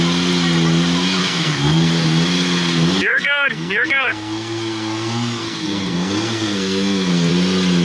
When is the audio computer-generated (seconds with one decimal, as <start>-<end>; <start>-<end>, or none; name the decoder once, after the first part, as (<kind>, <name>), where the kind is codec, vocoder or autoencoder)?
1.2-1.9 (codec, SNAC); 3.1-7.3